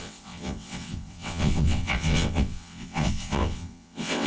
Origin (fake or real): fake